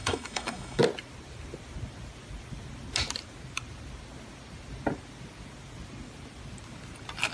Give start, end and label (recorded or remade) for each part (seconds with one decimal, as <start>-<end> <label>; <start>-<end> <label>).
0.0-0.8 remade; 0.8-7.3 recorded